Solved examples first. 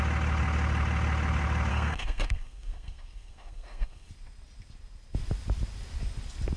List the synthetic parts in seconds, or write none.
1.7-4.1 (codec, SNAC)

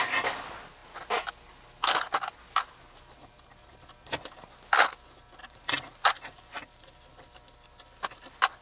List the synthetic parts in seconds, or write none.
5.4-7.1 (vocoder, BigVGAN v2)

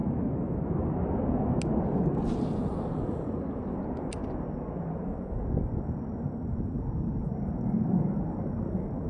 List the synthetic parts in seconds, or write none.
0.0-0.8 (autoencoder, DAC-VAE)

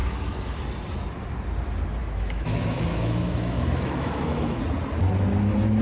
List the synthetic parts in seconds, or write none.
0.0-0.6 (autoencoder, DAC-VAE); 2.0-4.6

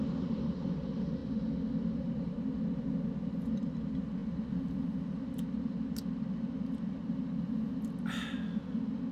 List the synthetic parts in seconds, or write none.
none